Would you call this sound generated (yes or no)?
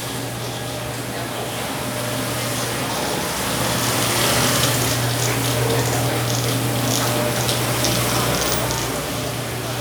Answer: no